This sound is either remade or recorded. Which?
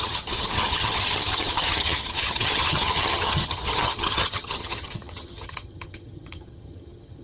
remade